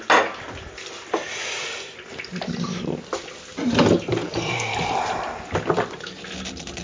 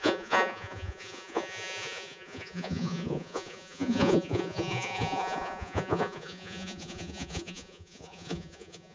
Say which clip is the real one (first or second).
first